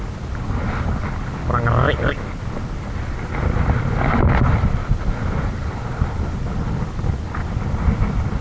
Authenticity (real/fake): real